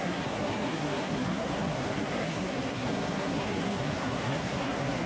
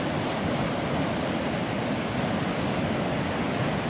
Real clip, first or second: second